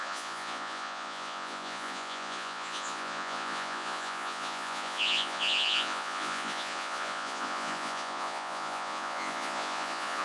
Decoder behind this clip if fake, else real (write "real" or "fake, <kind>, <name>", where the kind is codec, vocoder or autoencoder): fake, vocoder, Vocos